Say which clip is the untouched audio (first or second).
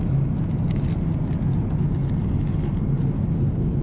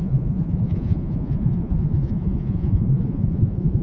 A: first